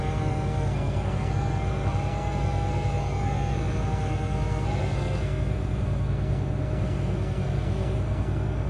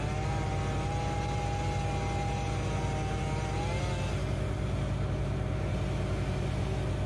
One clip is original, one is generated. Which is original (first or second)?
second